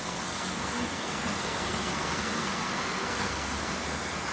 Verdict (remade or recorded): remade